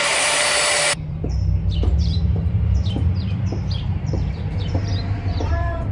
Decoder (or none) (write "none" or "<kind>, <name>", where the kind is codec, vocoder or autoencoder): vocoder, BigVGAN v2